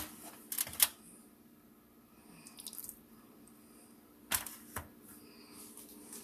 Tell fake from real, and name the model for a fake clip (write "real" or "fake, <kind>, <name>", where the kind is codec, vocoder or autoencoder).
real